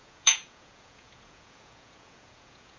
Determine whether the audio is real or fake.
fake